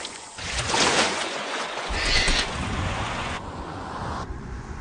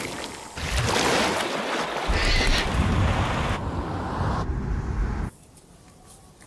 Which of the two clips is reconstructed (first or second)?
first